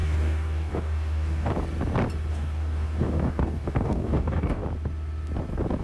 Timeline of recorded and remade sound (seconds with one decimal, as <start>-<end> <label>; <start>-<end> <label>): 0.0-1.5 remade; 1.5-2.3 recorded; 2.3-4.6 remade; 4.6-5.8 recorded

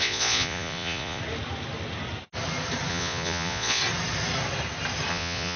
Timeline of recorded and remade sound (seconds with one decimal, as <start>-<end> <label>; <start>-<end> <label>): 0.0-1.2 remade; 1.2-2.9 recorded; 2.9-3.8 remade; 3.8-5.1 recorded; 5.1-5.6 remade

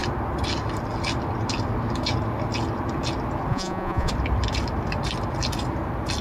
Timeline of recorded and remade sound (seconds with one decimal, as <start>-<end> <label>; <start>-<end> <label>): 0.0-3.5 recorded; 3.5-4.1 remade; 4.1-6.2 recorded

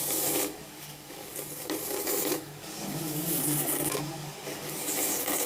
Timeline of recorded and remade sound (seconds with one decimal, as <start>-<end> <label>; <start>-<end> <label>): 0.0-5.5 remade